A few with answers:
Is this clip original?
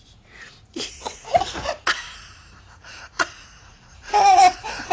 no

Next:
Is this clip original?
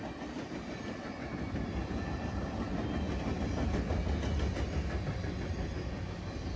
yes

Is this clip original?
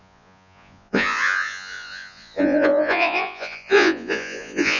no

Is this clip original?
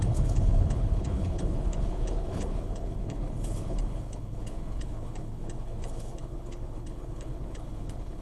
no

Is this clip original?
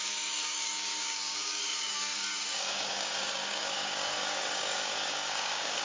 no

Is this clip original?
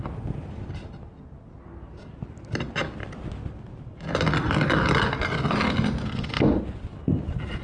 yes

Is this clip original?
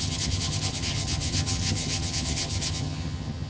no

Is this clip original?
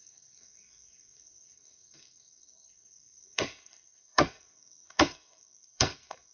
no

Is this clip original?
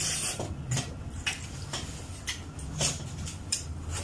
yes